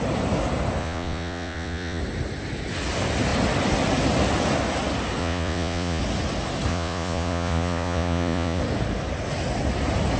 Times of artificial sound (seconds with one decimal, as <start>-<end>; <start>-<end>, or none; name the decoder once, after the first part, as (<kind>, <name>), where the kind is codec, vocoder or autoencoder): 0.8-2.0 (vocoder, Vocos); 5.2-6.0; 6.7-8.6